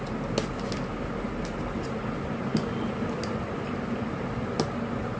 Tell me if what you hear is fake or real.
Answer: real